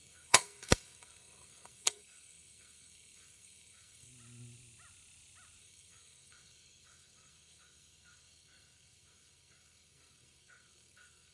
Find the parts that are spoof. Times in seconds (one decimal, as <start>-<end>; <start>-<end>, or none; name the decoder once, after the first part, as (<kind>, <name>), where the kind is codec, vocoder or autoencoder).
0.0-4.1 (codec, SNAC); 5.6-11.3